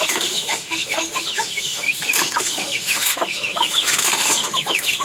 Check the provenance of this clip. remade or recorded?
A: remade